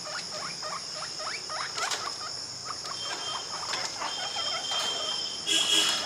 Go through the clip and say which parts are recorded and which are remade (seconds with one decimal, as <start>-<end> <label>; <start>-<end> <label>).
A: 0.0-6.1 recorded